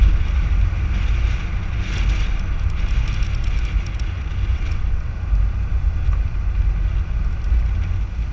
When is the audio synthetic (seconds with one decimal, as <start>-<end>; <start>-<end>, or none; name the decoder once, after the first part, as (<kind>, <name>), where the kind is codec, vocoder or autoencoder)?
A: 4.5-5.1 (vocoder, WaveNeXt)